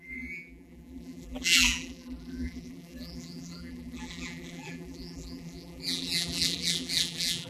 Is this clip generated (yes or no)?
yes